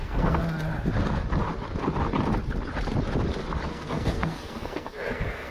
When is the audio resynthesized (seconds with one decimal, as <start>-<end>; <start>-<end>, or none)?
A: 0.0-0.4; 3.7-5.5